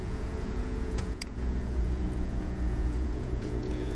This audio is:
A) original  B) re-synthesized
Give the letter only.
B